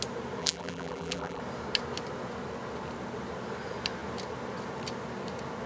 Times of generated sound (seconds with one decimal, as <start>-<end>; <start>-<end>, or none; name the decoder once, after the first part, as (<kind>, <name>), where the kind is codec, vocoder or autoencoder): 0.4-1.4 (vocoder, BigVGAN v2)